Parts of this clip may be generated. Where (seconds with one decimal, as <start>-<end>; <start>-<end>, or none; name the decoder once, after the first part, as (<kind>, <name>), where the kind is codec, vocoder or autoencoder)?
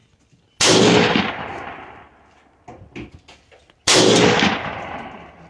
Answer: none